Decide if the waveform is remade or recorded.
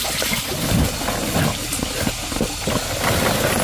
recorded